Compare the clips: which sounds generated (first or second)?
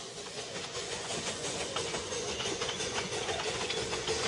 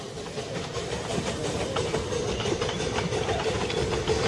first